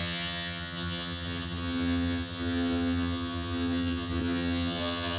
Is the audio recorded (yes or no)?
no